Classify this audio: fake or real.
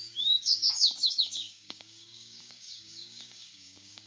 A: fake